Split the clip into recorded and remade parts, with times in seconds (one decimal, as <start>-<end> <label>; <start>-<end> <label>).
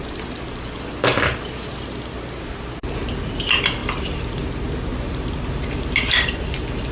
0.0-3.8 recorded; 3.8-4.5 remade; 4.5-4.9 recorded; 4.9-6.1 remade; 6.1-6.9 recorded